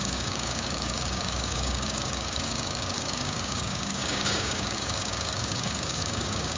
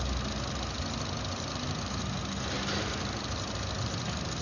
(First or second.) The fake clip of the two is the first